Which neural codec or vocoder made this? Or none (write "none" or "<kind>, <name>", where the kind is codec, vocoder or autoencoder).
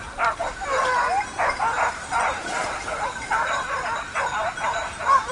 none